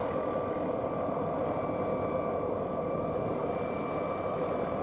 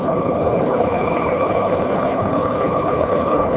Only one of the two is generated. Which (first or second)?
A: second